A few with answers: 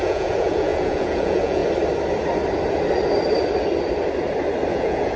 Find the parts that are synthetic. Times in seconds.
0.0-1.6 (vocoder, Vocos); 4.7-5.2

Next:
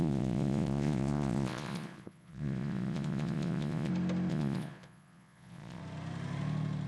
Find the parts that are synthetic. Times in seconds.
0.0-3.9 (vocoder, Vocos); 4.3-5.8

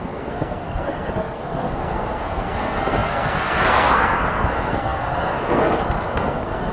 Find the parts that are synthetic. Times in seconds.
0.0-6.7 (codec, SNAC)

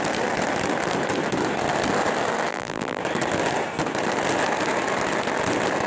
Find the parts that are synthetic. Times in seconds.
2.5-3.0 (vocoder, BigVGAN v2)

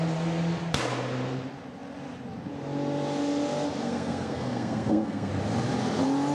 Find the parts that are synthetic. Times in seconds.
3.8-5.3 (codec, SNAC)